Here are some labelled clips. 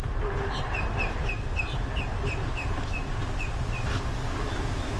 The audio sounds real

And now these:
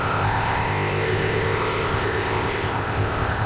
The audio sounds fake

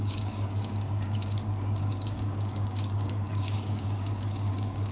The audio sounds fake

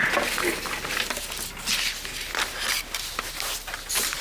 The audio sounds real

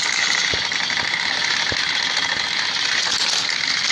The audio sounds real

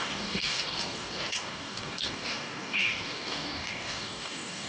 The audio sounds fake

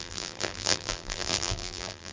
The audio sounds fake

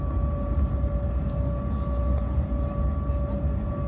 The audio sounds real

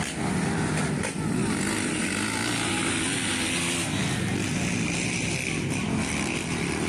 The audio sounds real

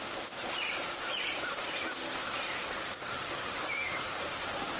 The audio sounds real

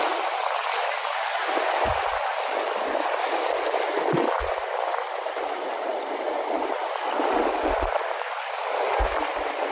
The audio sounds real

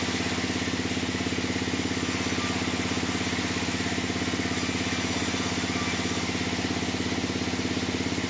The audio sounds real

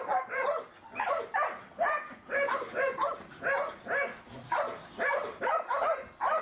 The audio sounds real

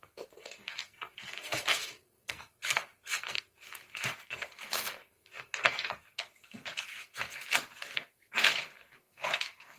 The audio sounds fake